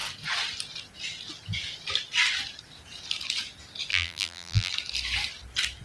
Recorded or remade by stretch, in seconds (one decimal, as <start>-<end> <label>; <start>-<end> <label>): 0.0-3.9 recorded; 3.9-4.7 remade; 4.7-5.8 recorded